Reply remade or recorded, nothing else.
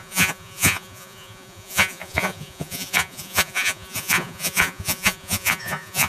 remade